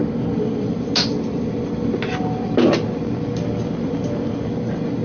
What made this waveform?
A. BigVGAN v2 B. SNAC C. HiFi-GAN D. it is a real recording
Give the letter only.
D